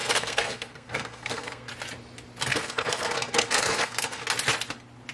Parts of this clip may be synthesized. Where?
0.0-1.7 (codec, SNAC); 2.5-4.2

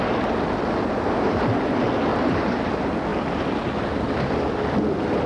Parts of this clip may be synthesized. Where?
2.1-2.7 (vocoder, BigVGAN v2)

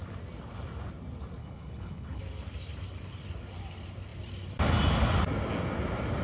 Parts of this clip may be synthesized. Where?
1.4-2.2 (codec, HILCodec)

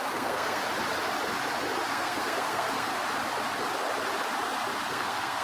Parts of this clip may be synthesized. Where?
0.0-0.6 (codec, SNAC); 1.9-2.9; 4.9-5.4

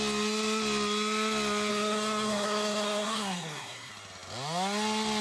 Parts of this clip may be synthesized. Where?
1.7-3.9 (codec, SNAC)